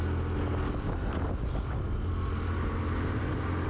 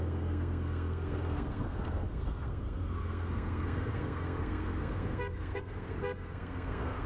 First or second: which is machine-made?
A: second